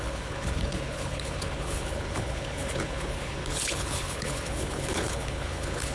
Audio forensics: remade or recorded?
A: remade